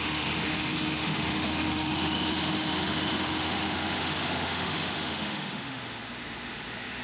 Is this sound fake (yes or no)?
yes